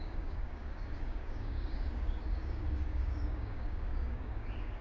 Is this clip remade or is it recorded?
remade